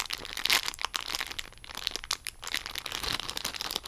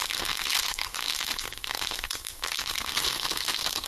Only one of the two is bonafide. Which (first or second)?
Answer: first